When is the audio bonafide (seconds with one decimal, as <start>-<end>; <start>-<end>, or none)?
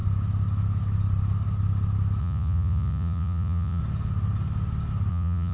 0.0-2.2; 3.8-5.1